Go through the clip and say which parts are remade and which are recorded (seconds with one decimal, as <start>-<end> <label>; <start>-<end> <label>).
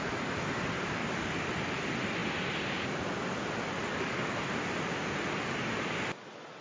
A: 0.0-1.0 recorded; 1.0-1.5 remade; 1.5-3.9 recorded; 3.9-4.4 remade; 4.4-6.6 recorded